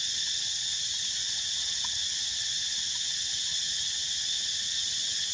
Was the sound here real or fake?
fake